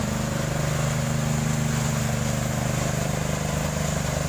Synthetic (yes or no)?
no